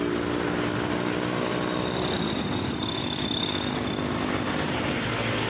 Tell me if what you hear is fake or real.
real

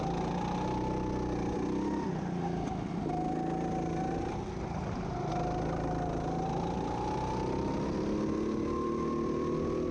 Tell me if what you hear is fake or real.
real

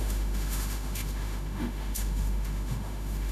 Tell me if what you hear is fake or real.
fake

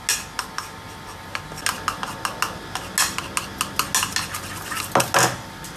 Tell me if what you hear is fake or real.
real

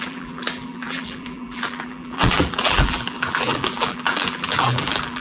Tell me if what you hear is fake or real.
fake